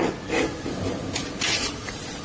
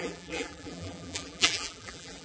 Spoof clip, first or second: second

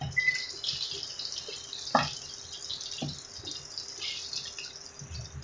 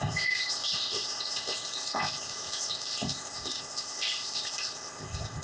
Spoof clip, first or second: second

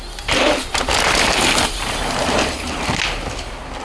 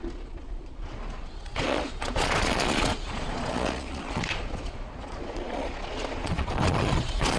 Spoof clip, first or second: second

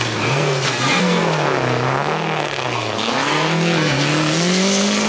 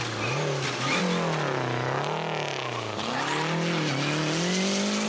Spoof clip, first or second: first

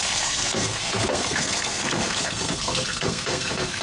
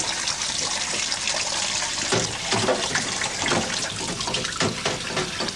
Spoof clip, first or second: first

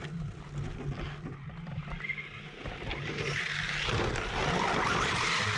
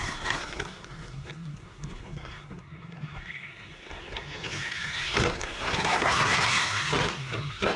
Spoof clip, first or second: second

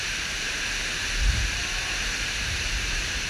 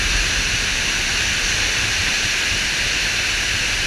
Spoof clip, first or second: first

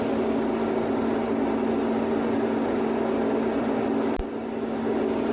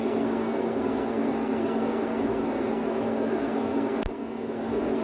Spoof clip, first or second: second